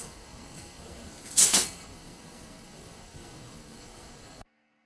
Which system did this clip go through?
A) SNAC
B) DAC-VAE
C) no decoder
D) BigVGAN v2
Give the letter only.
A